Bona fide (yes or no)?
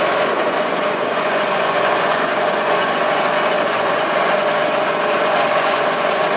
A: no